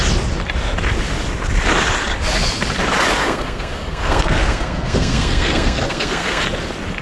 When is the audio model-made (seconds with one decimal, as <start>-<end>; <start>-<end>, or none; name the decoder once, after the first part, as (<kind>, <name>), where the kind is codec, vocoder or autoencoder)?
3.2-6.4 (codec, SNAC)